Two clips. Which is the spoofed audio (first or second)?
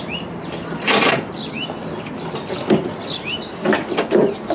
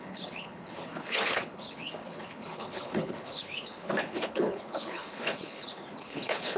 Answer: second